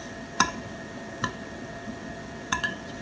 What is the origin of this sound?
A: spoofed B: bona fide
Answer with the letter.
A